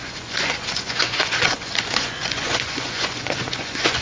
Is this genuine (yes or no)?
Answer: no